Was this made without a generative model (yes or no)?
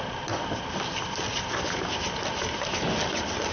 yes